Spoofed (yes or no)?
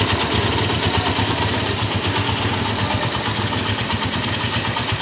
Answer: no